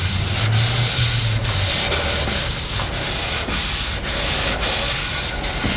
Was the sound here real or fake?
real